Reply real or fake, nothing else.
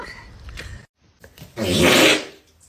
real